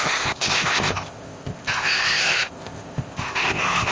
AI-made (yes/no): yes